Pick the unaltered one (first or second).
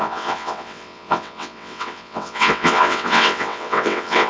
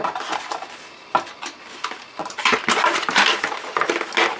second